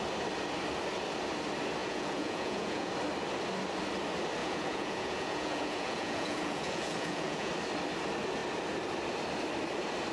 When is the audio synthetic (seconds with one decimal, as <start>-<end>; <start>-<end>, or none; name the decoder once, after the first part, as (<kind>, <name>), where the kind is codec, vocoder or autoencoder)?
1.8-2.9 (vocoder, Vocos); 4.4-7.5